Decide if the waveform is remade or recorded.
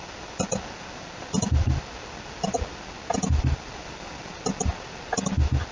recorded